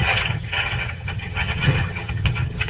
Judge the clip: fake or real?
fake